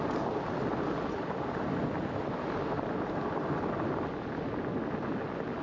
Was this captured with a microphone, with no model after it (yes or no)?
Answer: yes